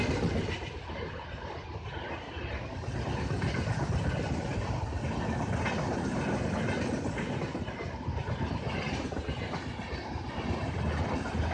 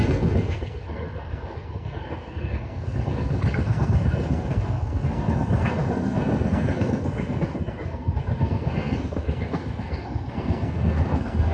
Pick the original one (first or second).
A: first